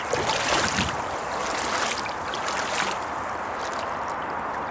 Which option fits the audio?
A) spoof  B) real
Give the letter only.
B